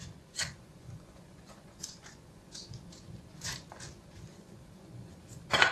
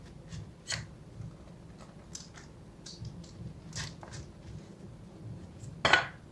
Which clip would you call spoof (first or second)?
first